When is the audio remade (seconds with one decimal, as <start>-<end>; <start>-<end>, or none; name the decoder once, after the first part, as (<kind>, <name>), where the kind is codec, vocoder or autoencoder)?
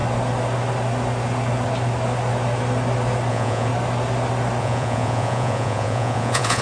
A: 3.3-3.7 (vocoder, Vocos); 4.6-6.6